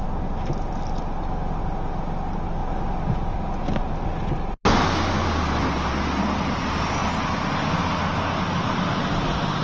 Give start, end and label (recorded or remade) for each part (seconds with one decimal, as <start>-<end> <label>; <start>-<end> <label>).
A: 0.0-9.6 recorded